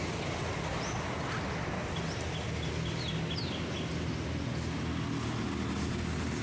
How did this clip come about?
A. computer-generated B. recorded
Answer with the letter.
B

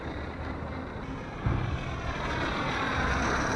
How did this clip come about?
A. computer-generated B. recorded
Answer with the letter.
A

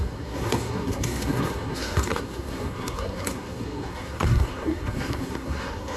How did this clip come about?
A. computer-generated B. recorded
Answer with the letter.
A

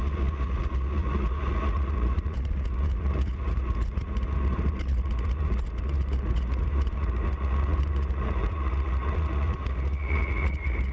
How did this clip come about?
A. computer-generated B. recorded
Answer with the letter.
A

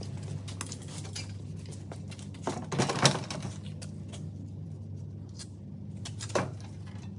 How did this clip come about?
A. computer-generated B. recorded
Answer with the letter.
B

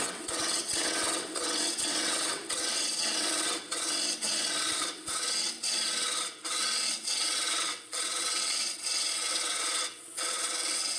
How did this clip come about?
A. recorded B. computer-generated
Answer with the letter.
B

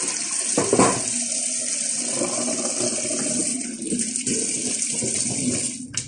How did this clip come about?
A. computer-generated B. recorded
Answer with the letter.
B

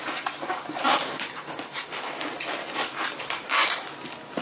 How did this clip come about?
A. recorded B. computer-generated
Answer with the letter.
B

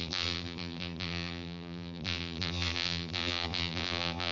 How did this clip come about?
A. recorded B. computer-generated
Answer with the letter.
B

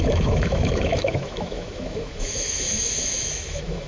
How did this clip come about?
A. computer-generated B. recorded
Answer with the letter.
A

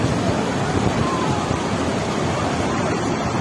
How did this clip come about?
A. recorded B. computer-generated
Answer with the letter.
B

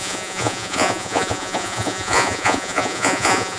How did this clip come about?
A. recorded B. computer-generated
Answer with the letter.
B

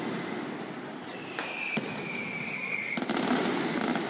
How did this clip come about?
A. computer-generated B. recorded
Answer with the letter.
B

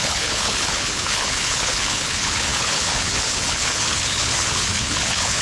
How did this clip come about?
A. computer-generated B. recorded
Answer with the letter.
A